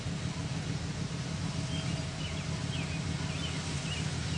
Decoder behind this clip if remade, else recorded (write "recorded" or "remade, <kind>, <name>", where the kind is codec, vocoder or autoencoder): recorded